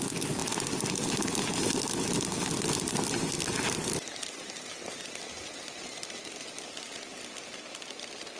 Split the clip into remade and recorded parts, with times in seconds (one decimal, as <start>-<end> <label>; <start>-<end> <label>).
0.0-8.4 recorded